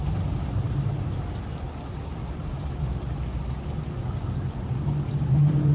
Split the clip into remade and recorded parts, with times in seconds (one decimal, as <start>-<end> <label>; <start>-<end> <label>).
0.0-5.7 recorded